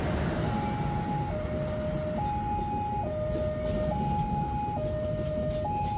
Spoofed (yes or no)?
no